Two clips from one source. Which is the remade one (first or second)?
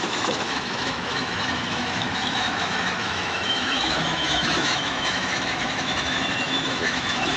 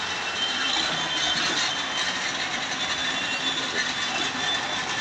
first